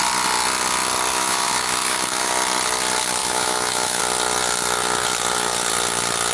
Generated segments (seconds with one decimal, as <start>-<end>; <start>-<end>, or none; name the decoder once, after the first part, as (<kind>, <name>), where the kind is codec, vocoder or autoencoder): 1.1-2.3 (autoencoder, DAC-VAE); 3.2-4.0